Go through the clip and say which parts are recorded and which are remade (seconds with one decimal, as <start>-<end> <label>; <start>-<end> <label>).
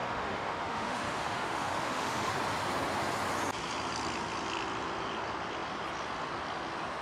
0.0-2.3 remade; 2.3-7.0 recorded